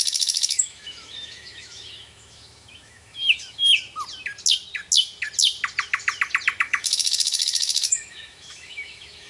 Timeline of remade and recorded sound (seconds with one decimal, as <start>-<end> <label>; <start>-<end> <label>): 0.0-3.7 remade; 3.7-6.6 recorded; 6.6-9.3 remade

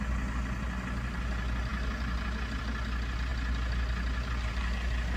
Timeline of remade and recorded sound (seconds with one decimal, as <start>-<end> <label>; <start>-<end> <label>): 0.0-5.2 recorded